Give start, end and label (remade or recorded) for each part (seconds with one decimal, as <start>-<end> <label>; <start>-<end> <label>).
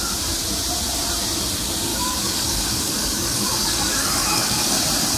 0.0-1.9 recorded; 1.9-4.8 remade; 4.8-5.2 recorded